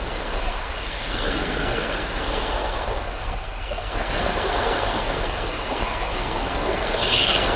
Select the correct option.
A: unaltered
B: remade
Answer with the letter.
B